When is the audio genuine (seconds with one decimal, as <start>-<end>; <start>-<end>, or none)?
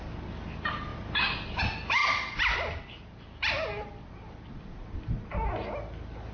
0.0-6.3